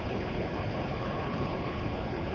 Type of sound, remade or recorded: remade